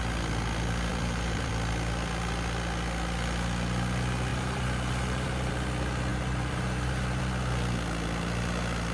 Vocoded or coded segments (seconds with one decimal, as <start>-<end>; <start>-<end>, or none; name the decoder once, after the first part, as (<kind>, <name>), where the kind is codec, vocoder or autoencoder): 0.9-1.5 (vocoder, BigVGAN v2); 4.3-5.5; 6.1-7.2